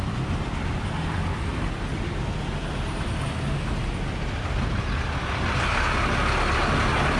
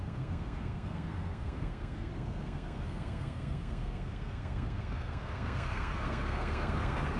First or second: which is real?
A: first